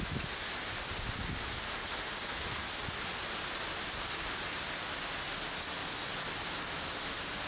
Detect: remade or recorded recorded